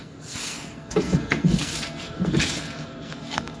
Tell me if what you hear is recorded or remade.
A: remade